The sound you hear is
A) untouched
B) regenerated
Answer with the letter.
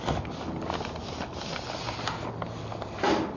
A